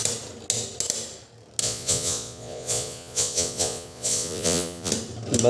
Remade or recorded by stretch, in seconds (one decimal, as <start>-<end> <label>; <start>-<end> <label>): 0.0-1.6 recorded; 1.6-4.9 remade; 4.9-5.5 recorded